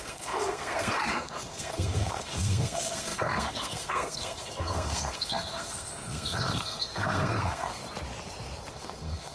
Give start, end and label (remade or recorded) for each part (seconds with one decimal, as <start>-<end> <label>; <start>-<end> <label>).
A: 0.0-7.8 remade; 7.8-8.7 recorded; 8.7-9.3 remade